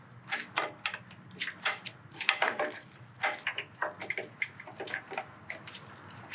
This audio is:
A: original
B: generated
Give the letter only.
A